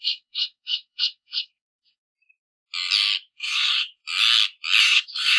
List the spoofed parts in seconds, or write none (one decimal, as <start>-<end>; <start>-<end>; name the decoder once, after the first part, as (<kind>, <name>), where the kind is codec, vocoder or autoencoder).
0.0-2.0 (codec, SNAC); 3.3-4.0; 4.8-5.4